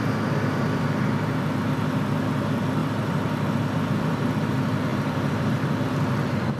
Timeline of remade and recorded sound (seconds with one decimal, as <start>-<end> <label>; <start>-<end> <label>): 0.0-2.8 recorded; 2.8-4.3 remade; 4.3-4.9 recorded; 4.9-5.4 remade; 5.4-6.6 recorded